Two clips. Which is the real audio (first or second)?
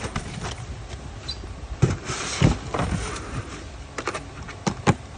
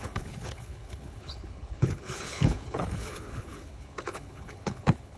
first